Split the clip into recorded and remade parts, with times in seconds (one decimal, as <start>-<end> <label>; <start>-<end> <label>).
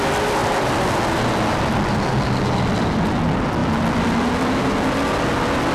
0.0-5.7 recorded